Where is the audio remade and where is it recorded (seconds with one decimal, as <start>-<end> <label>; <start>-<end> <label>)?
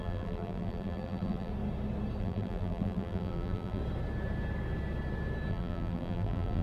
0.0-1.5 remade; 1.5-2.2 recorded; 2.2-3.8 remade; 3.8-5.5 recorded; 5.5-6.6 remade